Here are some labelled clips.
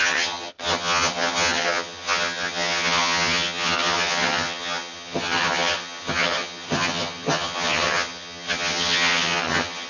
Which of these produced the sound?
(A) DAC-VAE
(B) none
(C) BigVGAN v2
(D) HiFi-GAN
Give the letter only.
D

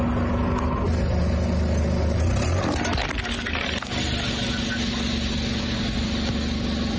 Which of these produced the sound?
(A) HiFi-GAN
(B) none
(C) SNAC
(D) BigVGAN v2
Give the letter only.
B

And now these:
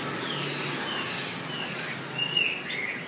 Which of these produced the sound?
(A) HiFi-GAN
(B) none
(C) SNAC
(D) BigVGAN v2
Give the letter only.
B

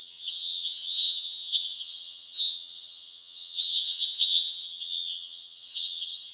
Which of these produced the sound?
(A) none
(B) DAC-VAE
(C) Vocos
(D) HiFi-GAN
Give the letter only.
D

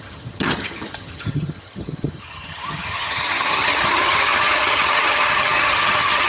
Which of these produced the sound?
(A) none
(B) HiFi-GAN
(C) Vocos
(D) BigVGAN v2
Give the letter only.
B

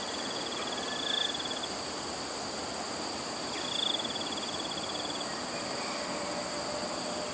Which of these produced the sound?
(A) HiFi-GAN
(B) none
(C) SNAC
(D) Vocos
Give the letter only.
B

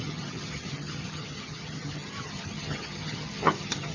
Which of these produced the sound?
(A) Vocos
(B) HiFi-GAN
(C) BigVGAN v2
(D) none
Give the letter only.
B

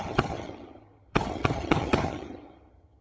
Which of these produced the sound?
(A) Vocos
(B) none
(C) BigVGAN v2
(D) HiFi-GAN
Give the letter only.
D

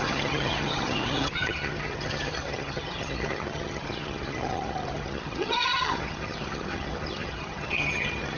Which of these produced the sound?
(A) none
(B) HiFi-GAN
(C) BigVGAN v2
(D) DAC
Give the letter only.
B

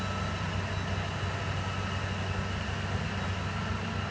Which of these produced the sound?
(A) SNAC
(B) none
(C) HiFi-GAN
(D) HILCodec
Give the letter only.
B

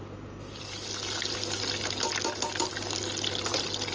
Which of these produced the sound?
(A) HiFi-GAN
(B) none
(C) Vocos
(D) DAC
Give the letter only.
B